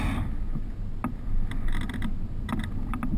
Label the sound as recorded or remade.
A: recorded